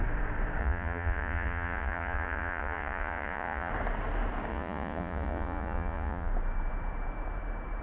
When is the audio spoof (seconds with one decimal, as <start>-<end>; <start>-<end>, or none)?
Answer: 0.6-3.7; 4.5-6.3